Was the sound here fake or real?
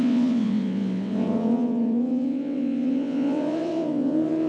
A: fake